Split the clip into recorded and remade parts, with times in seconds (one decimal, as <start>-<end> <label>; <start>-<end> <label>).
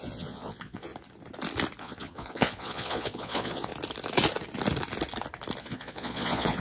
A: 0.0-0.9 remade; 0.9-1.8 recorded; 1.8-3.7 remade; 3.7-5.6 recorded; 5.6-6.6 remade